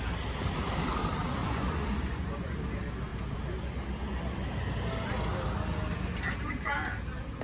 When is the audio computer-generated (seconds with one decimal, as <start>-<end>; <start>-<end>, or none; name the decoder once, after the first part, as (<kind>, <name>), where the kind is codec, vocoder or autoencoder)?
1.4-2.6 (vocoder, Vocos)